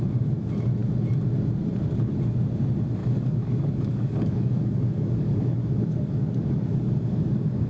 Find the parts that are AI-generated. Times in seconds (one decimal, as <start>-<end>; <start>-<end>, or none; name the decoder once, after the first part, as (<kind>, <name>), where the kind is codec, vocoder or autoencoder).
3.0-7.7 (codec, DAC)